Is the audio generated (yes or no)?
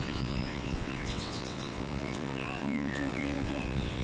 yes